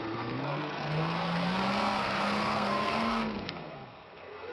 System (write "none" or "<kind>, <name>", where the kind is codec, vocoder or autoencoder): codec, SNAC